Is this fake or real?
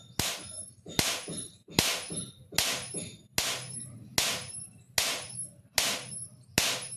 real